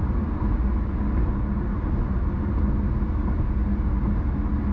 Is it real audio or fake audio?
real